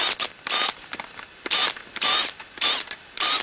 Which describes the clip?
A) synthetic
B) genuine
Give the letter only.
B